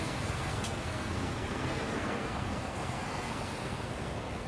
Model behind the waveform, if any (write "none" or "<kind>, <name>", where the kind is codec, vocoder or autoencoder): codec, SNAC